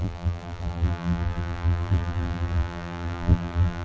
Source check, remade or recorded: remade